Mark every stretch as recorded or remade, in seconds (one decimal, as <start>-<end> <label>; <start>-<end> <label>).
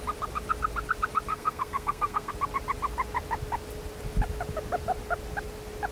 0.0-1.3 recorded; 1.3-2.3 remade; 2.3-5.9 recorded